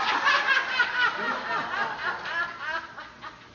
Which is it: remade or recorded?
recorded